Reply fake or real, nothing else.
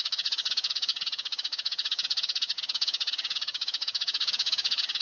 fake